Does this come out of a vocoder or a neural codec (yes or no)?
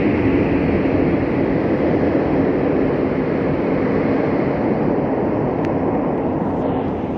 no